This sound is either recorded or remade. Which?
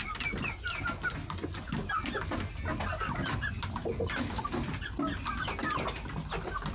recorded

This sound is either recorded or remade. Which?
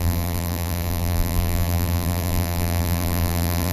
remade